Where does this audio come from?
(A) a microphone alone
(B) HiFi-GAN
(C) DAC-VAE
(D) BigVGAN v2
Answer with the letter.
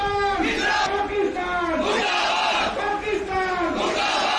A